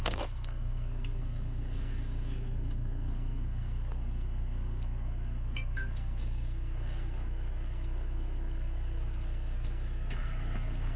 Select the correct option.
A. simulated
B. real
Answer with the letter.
A